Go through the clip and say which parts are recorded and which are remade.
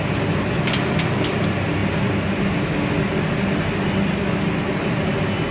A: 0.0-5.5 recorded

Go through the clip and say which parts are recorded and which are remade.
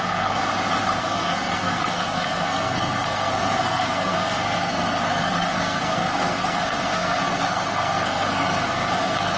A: 0.0-0.4 remade; 0.4-1.0 recorded; 1.0-9.4 remade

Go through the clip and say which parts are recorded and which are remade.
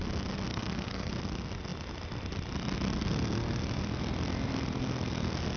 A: 0.0-0.5 recorded; 0.5-1.1 remade; 1.1-5.6 recorded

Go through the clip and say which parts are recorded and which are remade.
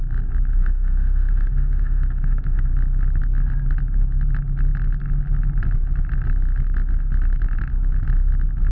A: 0.0-0.5 recorded; 0.5-2.7 remade; 2.7-8.7 recorded